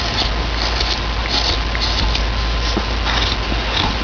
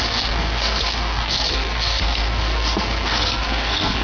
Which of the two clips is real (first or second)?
first